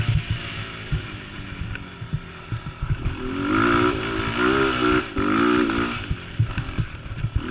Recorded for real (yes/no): yes